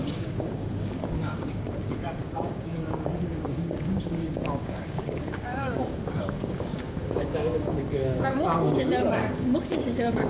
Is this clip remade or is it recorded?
remade